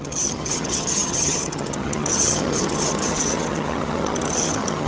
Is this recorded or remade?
remade